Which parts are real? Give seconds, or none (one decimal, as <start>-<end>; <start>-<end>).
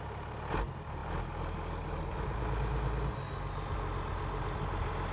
0.0-5.1